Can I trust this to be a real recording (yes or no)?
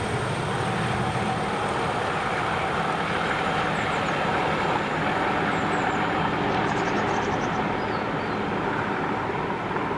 yes